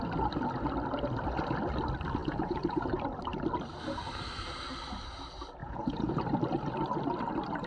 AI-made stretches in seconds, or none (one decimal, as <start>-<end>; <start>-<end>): 2.2-2.9; 5.6-6.1